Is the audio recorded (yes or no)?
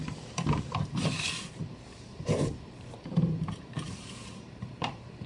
no